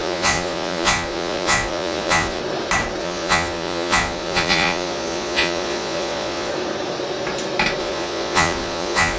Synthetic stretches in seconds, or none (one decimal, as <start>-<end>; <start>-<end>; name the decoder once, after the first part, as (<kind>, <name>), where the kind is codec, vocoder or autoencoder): 0.0-2.4 (vocoder, Vocos); 3.0-6.5; 7.8-9.2